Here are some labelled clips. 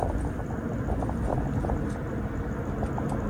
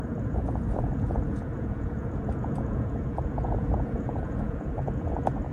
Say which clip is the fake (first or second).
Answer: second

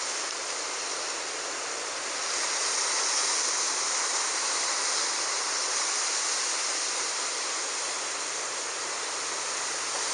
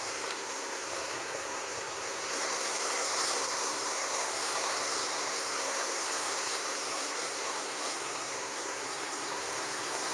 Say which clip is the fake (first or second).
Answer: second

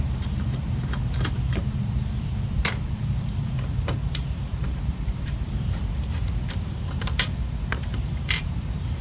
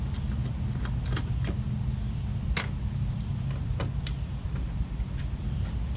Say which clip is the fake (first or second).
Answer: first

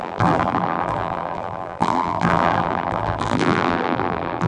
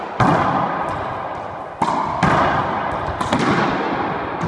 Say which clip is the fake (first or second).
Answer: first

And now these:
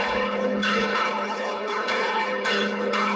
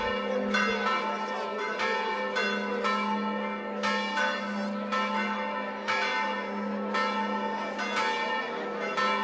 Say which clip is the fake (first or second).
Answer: first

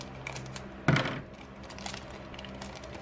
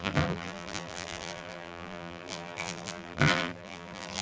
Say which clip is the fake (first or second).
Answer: second